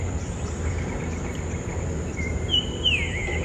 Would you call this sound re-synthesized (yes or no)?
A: yes